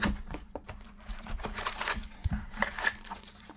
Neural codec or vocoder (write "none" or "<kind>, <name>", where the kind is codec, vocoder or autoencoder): vocoder, Vocos